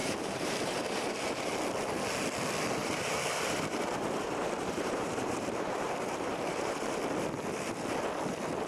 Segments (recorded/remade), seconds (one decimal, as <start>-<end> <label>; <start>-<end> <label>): 0.0-1.5 remade; 1.5-2.8 recorded; 2.8-7.0 remade; 7.0-8.7 recorded